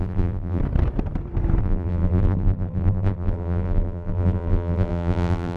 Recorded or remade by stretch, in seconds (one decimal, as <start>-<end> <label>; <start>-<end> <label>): 0.0-0.6 remade; 0.6-1.6 recorded; 1.6-5.6 remade